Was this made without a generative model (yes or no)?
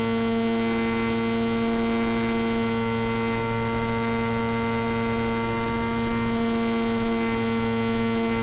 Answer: yes